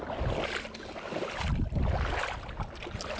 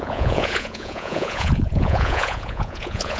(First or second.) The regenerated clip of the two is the second